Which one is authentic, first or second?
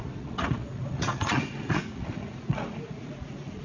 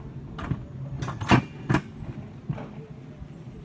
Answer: second